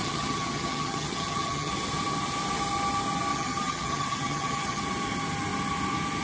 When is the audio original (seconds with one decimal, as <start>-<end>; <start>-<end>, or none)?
1.7-3.3; 4.8-6.2